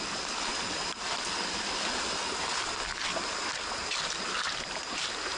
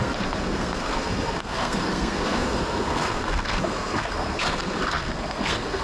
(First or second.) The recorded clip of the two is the first